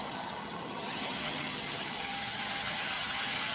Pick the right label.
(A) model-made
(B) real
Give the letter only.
A